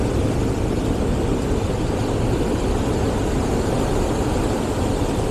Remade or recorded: recorded